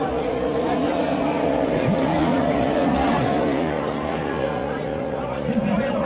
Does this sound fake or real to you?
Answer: fake